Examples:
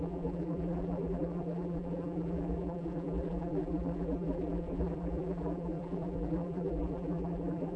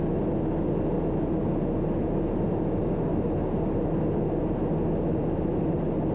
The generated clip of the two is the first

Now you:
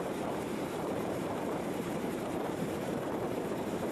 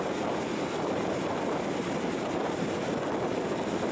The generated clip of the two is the first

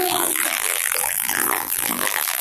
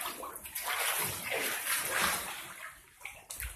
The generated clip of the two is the first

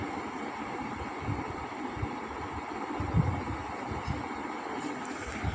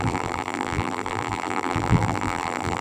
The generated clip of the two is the second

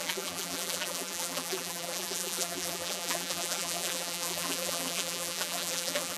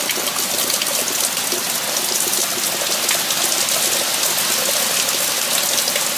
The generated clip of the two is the first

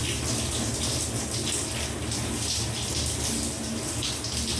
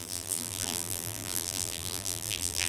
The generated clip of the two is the second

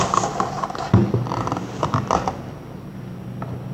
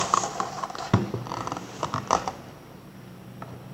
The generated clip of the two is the second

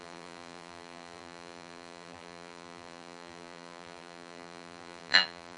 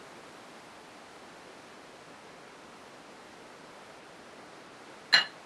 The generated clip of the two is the first